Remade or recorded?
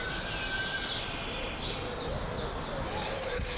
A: recorded